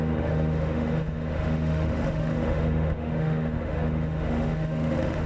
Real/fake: fake